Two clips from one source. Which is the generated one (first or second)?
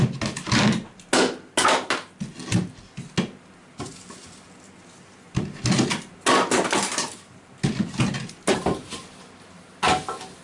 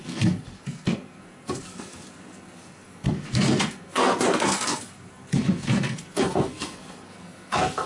second